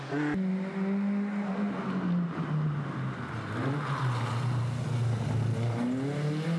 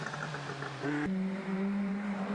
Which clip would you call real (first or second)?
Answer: first